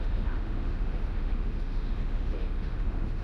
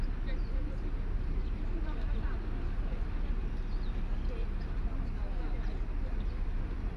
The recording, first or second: second